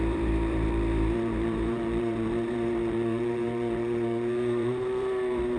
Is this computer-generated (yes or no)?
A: yes